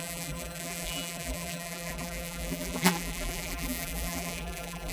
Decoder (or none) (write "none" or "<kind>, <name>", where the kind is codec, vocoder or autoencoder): vocoder, BigVGAN v2